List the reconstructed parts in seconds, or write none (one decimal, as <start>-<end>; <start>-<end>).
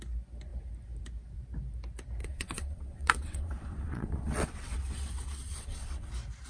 2.2-6.1